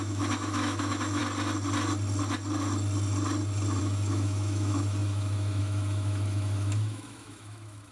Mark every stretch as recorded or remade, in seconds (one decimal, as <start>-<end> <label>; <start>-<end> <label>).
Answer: 0.0-1.2 remade; 1.2-3.8 recorded; 3.8-7.9 remade